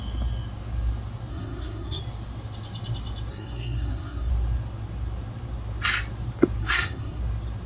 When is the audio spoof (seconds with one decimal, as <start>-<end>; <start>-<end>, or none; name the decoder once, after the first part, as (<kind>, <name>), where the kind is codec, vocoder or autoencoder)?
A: 1.3-2.0 (codec, SNAC); 3.3-4.3; 6.6-7.2